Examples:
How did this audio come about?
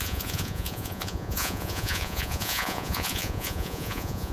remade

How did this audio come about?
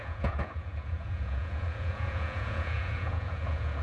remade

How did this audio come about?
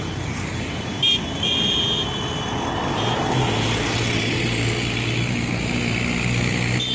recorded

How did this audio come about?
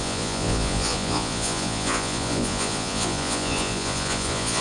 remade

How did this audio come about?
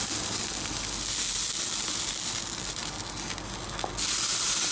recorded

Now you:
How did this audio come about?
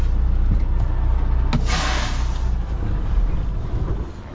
recorded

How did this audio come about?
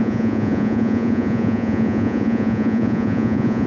remade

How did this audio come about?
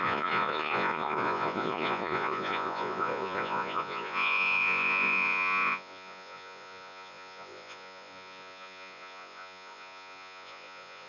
remade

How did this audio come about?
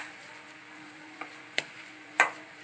remade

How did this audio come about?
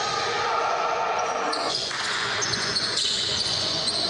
remade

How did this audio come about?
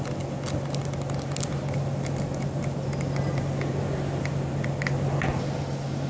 recorded